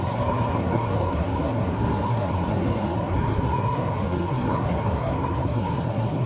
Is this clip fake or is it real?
fake